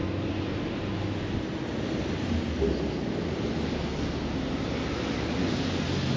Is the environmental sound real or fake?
real